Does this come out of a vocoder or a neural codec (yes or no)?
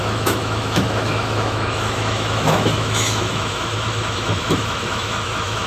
yes